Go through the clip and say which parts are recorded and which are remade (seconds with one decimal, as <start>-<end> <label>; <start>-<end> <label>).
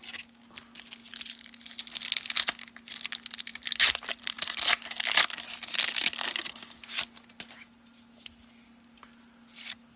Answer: 0.0-3.5 recorded; 3.5-5.2 remade; 5.2-10.0 recorded